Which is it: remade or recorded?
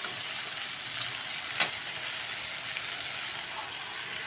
recorded